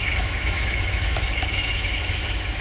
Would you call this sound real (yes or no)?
no